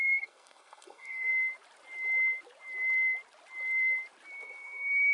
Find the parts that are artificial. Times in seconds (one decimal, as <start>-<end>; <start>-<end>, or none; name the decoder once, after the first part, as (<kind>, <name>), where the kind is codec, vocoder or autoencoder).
0.0-1.3 (codec, SNAC); 4.4-5.1